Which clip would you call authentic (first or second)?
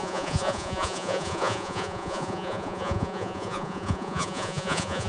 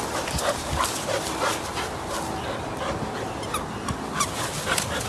second